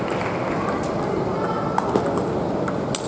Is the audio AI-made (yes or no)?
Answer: no